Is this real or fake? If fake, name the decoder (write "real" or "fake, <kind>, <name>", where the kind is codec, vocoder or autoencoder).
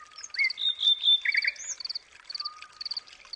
real